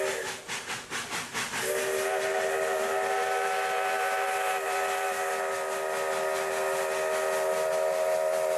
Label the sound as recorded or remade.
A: recorded